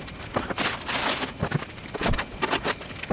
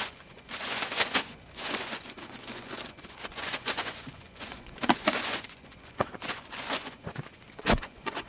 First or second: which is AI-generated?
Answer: second